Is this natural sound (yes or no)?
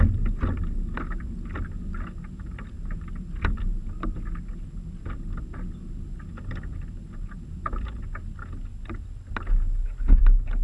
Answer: yes